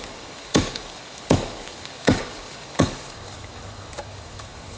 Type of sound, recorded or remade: remade